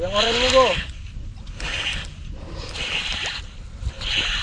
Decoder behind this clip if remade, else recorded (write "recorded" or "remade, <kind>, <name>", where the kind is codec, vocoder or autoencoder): recorded